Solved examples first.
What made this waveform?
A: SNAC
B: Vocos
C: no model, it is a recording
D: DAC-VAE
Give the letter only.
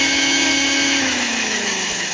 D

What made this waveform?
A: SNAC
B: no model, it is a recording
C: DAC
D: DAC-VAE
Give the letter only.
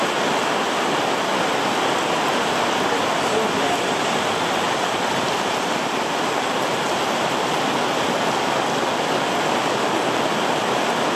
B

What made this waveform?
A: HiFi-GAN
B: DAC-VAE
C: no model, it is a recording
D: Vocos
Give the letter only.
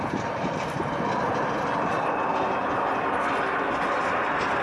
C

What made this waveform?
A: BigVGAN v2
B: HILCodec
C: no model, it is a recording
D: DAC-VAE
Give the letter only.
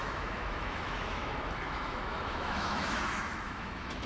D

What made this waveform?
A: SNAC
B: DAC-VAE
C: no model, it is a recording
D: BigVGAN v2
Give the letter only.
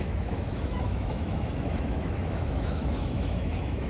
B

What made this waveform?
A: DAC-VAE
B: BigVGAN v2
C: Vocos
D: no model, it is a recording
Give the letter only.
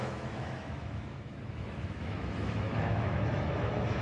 A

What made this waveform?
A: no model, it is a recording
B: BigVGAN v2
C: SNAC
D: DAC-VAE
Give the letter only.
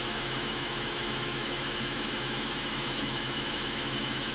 D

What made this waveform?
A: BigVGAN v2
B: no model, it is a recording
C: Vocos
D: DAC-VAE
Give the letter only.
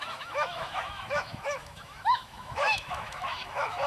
D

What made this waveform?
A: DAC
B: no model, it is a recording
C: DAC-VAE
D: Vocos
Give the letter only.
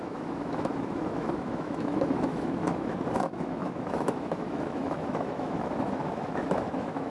C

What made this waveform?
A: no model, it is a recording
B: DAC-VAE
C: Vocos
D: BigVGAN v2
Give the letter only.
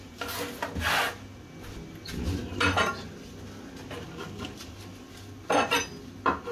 A